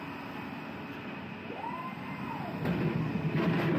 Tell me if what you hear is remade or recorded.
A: recorded